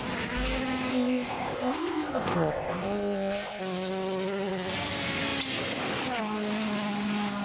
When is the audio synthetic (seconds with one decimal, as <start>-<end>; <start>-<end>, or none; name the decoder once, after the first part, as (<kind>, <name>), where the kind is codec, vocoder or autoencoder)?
0.9-3.6 (codec, ZipCodec)